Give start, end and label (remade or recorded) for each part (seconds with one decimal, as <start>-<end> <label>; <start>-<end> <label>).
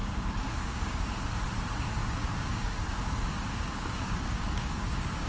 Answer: 0.0-1.1 remade; 1.1-2.0 recorded; 2.0-5.3 remade